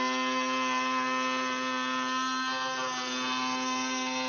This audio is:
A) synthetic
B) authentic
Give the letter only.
B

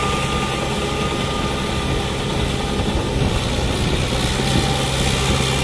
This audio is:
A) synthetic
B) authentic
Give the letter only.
B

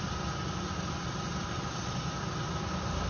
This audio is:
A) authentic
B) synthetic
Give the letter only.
A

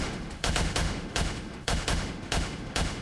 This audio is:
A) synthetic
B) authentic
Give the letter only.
A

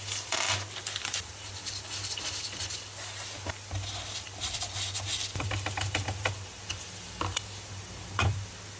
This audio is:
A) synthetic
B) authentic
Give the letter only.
A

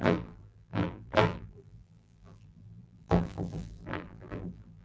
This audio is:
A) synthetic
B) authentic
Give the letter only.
A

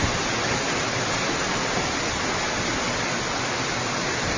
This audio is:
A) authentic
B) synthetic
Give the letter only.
A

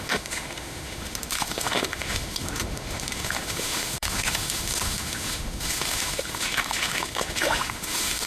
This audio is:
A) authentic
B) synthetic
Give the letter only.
B